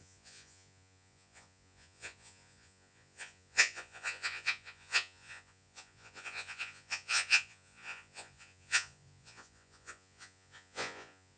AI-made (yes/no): yes